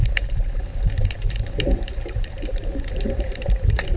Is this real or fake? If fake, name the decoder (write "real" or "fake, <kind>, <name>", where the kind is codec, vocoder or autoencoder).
fake, vocoder, BigVGAN v2